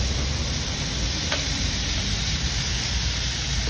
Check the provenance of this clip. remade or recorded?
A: remade